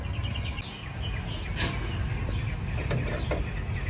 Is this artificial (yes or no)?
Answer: no